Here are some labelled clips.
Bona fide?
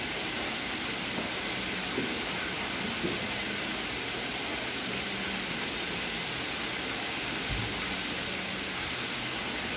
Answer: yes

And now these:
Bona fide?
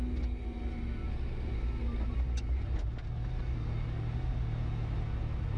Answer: yes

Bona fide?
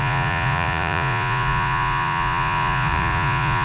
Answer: no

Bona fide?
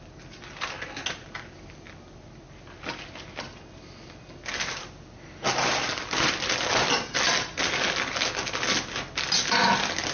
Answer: yes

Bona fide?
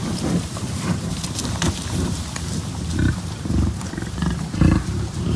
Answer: no